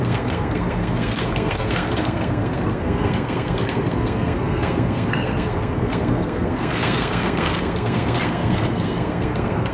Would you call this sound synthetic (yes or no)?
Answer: yes